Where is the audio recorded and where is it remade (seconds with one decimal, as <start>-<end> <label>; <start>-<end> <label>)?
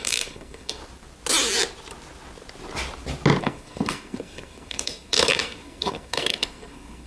0.0-0.8 remade; 0.8-3.4 recorded; 3.4-7.1 remade